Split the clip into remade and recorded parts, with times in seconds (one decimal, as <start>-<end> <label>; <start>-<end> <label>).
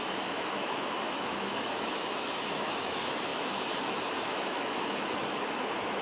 0.0-6.0 remade